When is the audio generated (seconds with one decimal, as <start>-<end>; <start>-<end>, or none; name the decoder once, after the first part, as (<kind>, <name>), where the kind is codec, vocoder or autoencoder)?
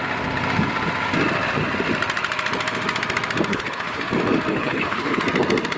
3.5-4.1 (codec, HILCodec); 4.5-5.2